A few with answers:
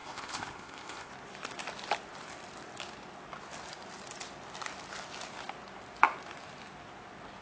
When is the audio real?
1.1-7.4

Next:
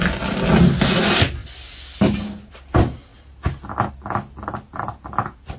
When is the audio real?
0.0-5.6